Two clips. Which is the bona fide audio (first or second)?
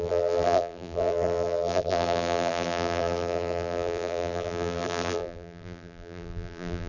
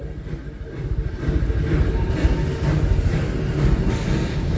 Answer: second